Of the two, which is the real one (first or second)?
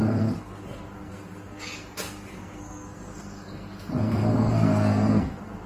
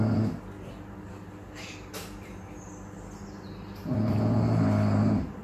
second